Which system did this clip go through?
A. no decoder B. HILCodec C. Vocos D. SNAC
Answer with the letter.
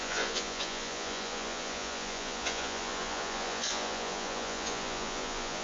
C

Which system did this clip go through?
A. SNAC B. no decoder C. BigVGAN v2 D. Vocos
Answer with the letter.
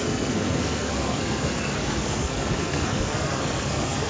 A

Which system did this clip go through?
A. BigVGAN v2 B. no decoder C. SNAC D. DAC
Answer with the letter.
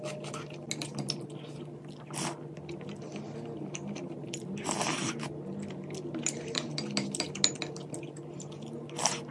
B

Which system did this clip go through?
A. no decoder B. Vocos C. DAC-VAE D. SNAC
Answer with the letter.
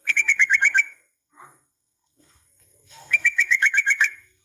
D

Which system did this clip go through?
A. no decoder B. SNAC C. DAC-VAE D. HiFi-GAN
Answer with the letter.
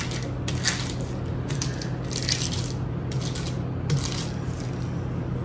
A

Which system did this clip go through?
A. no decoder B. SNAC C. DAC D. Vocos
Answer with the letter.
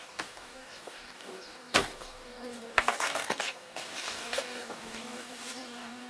C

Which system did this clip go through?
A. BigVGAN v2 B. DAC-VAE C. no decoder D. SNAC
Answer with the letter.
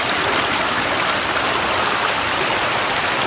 C